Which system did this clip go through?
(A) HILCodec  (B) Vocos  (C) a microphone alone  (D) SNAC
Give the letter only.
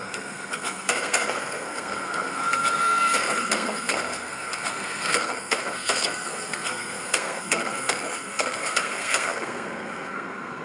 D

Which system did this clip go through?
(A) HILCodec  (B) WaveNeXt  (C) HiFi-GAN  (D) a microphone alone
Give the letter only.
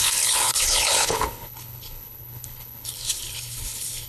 A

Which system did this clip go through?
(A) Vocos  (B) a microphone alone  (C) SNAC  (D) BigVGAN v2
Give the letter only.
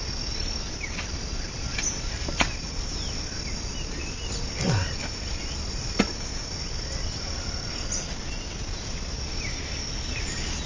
B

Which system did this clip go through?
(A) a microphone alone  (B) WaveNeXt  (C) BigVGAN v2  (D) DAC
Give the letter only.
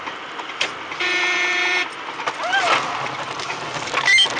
C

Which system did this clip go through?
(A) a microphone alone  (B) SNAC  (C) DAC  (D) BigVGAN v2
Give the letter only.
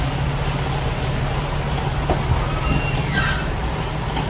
A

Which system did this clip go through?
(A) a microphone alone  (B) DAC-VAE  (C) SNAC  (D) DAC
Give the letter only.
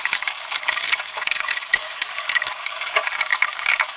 D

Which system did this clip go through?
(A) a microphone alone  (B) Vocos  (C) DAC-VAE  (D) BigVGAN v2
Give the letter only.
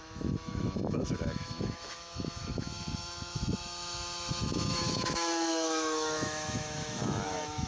C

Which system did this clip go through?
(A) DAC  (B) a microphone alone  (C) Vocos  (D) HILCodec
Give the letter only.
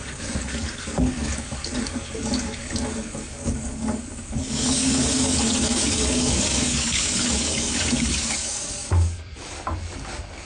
A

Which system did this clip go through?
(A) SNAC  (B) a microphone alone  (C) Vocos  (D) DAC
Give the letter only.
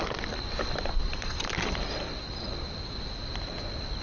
B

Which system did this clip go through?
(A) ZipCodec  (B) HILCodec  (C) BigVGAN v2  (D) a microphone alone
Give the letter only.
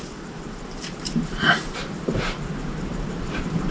C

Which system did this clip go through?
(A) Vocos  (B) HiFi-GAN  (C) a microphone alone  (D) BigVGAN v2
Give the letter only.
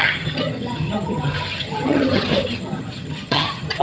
B